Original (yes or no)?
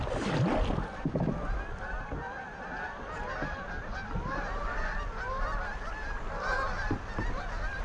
yes